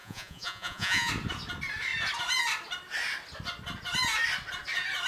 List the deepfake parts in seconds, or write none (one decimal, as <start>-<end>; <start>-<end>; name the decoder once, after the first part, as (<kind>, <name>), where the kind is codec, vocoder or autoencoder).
0.0-1.1 (vocoder, Vocos)